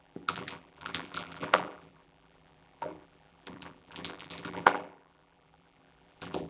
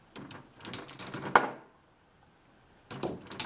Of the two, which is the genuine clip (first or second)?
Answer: second